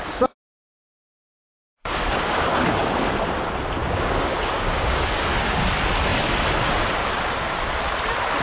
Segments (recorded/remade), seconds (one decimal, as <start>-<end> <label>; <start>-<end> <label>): 0.0-0.6 recorded; 0.6-2.4 remade; 2.4-3.8 recorded; 3.8-5.6 remade; 5.6-8.4 recorded